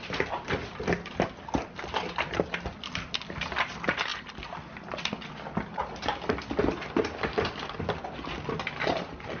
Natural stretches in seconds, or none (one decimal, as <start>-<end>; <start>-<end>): 0.0-9.4